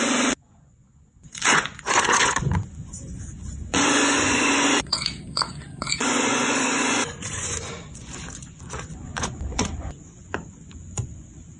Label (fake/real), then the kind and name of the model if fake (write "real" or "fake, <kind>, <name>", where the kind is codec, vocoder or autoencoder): fake, vocoder, Vocos